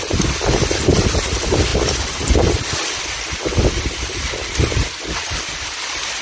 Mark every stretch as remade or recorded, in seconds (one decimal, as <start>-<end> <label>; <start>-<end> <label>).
0.0-6.2 recorded

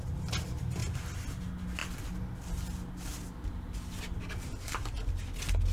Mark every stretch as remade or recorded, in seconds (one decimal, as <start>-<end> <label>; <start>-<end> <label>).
0.0-0.8 recorded; 0.8-1.4 remade; 1.4-5.7 recorded

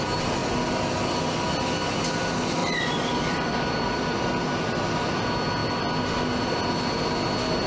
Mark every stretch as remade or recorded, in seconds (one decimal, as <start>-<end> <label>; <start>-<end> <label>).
0.0-2.6 recorded; 2.6-4.8 remade; 4.8-7.7 recorded

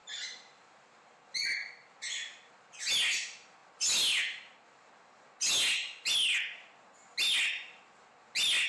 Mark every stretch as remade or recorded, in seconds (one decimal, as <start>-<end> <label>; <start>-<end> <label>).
0.0-2.5 remade; 2.5-8.7 recorded